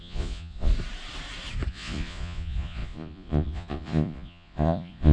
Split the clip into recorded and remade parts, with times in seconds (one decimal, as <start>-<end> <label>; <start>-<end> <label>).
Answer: 0.0-0.7 remade; 0.7-1.7 recorded; 1.7-5.1 remade